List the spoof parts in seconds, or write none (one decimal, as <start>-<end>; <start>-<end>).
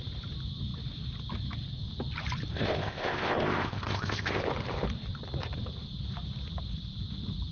2.5-4.4